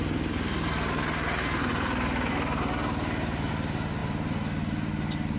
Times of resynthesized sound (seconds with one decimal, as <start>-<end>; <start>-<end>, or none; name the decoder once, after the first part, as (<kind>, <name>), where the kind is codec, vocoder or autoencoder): none